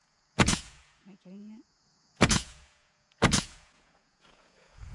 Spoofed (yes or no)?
yes